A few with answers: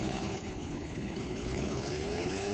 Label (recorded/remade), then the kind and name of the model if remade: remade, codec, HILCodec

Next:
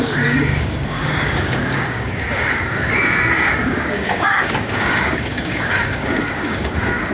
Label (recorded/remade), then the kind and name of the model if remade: remade, codec, DAC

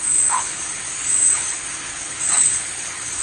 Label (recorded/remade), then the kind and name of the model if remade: remade, codec, HILCodec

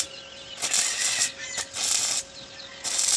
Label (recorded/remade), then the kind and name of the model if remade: recorded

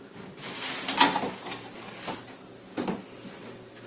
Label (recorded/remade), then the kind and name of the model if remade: recorded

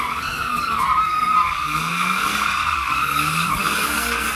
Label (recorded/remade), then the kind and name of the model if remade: remade, codec, SNAC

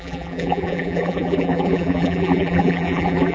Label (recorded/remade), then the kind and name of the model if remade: remade, vocoder, BigVGAN v2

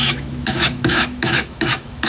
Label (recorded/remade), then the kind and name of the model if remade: remade, autoencoder, DAC-VAE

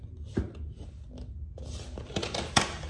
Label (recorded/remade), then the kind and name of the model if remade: recorded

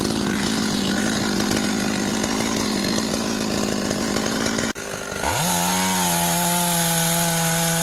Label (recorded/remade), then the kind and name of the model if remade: recorded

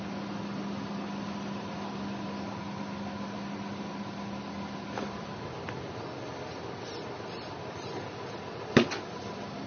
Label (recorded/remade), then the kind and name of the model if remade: recorded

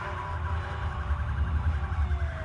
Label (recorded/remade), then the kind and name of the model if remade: recorded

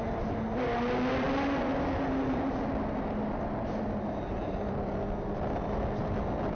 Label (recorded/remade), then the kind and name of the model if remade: recorded